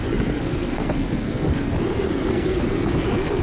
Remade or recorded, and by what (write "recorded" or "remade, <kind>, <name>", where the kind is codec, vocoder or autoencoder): remade, codec, SNAC